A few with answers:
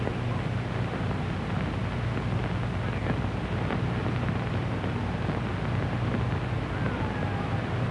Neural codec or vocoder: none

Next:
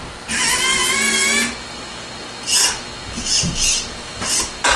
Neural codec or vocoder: none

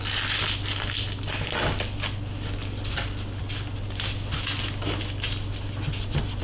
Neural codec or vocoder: none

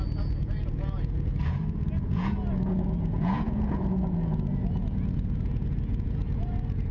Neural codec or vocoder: vocoder, Vocos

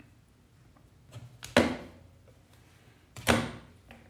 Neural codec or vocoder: none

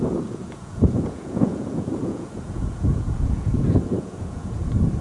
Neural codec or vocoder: vocoder, Vocos